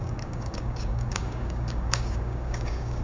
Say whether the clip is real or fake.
fake